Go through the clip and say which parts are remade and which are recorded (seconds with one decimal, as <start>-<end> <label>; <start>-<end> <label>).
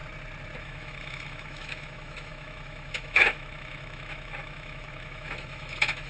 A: 0.0-0.6 recorded; 0.6-6.1 remade